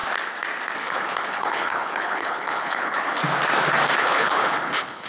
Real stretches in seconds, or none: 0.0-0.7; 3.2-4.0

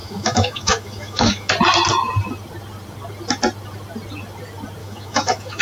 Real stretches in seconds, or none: 1.5-4.8

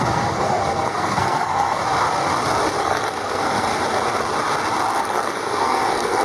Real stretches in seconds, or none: 1.8-2.8; 3.7-5.0

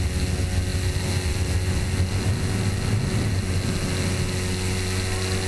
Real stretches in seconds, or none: 0.0-5.5

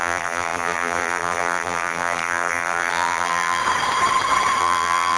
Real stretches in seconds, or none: 3.6-4.6

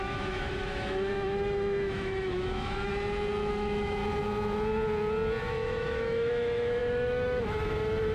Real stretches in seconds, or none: 2.9-3.5; 4.0-5.4